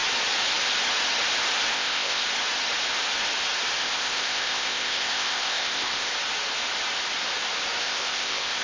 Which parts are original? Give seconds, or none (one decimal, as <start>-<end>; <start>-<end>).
0.0-1.7; 2.2-3.8; 6.1-7.8